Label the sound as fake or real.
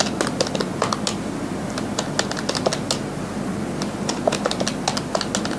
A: real